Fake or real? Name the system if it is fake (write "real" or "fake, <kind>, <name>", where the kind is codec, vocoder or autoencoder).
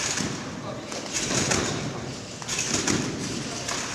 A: real